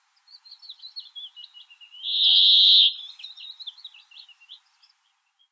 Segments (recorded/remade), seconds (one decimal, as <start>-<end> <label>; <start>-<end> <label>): 0.0-5.5 recorded